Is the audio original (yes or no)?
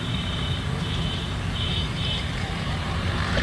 no